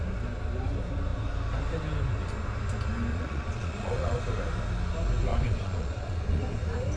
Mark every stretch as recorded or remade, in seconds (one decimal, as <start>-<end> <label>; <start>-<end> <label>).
0.0-3.1 recorded; 3.1-4.2 remade; 4.2-5.3 recorded; 5.3-6.4 remade; 6.4-7.0 recorded